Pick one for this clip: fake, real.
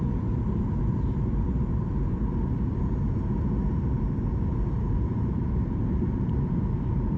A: fake